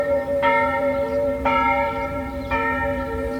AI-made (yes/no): yes